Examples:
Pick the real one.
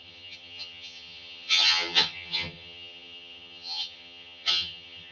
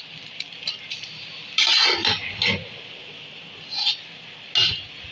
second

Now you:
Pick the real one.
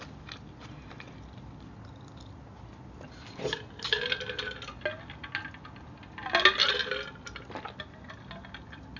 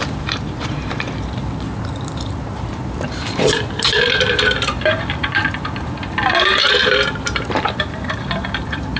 first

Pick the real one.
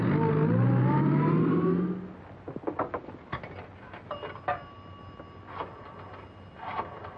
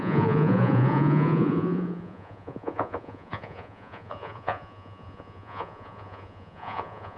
first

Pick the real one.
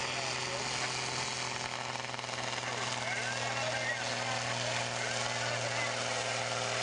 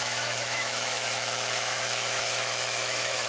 first